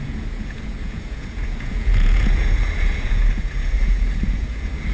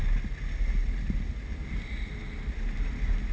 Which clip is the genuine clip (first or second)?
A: second